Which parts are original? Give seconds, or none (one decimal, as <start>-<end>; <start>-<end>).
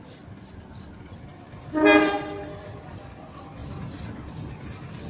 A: 0.0-5.1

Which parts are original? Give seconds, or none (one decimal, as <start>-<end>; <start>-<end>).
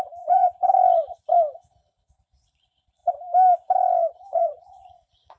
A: 0.7-1.8; 3.0-4.1